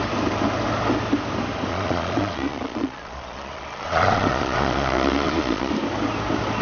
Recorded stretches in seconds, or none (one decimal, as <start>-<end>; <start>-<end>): 0.0-1.7; 5.7-6.6